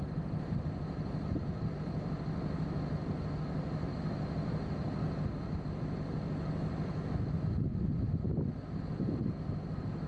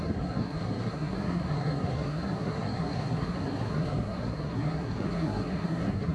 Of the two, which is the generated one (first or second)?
second